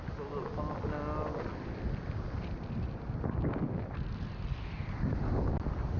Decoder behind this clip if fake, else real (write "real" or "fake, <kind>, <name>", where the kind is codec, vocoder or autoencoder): real